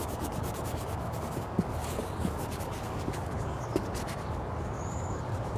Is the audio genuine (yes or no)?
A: no